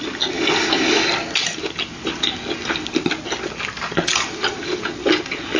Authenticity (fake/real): real